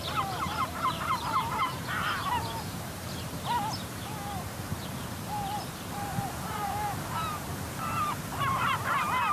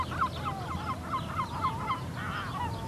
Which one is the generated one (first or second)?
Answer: first